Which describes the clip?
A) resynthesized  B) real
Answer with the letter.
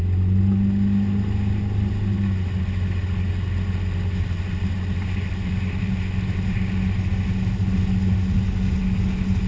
B